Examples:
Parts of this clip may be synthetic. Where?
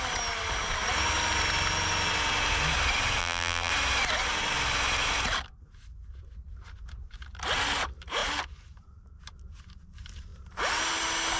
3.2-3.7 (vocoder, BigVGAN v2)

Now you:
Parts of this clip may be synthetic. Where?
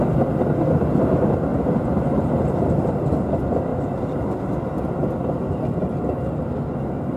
1.5-2.9 (vocoder, BigVGAN v2); 3.7-4.5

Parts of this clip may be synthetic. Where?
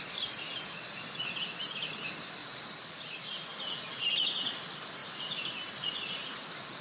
2.4-3.3 (vocoder, BigVGAN v2); 5.0-6.2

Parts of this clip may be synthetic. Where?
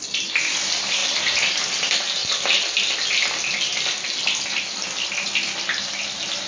1.0-1.7 (vocoder, BigVGAN v2)